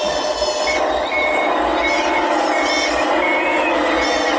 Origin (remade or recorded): remade